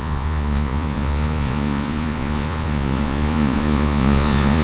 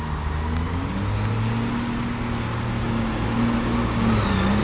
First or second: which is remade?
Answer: first